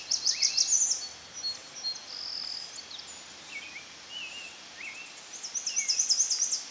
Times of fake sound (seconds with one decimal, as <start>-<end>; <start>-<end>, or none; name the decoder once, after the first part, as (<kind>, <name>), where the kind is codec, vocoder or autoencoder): none